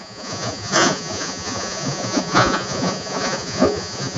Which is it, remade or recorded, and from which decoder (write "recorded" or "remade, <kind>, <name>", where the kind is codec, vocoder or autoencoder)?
remade, vocoder, Vocos